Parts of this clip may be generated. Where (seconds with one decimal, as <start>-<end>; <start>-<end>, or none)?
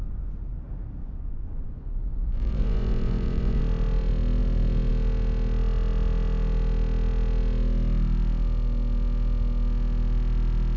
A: 1.0-3.6